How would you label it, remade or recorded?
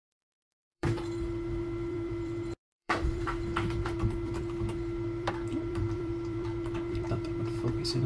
remade